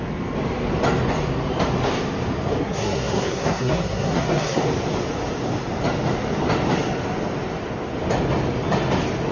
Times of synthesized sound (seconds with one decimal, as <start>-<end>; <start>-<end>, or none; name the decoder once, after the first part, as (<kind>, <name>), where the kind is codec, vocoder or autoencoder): 2.6-4.6 (codec, SNAC)

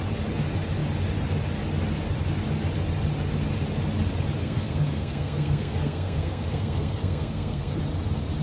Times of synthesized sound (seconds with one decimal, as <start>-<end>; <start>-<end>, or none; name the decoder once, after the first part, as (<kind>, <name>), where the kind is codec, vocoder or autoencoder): 4.4-7.8 (codec, SNAC)

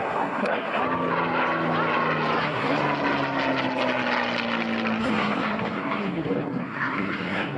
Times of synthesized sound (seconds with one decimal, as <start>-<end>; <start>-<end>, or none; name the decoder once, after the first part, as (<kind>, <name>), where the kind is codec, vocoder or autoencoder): 0.0-0.8 (codec, SNAC); 2.4-2.8; 5.0-7.6